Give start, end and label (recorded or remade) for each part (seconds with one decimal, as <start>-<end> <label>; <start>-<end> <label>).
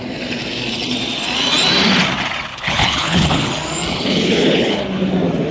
0.0-2.5 recorded; 2.5-3.5 remade; 3.5-3.9 recorded; 3.9-4.8 remade; 4.8-5.5 recorded